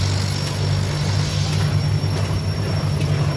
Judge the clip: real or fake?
real